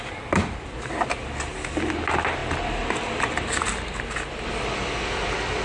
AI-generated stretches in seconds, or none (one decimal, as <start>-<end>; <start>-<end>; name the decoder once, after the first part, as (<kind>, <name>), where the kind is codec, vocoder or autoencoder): none